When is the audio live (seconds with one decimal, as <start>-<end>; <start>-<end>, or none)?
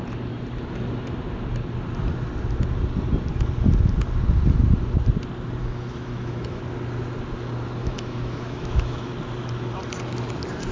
0.0-5.6; 6.6-7.8; 9.1-10.7